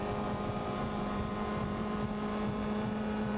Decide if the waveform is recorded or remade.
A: remade